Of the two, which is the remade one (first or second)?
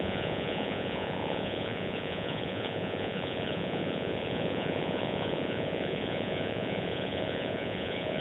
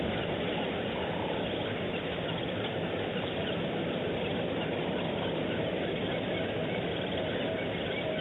first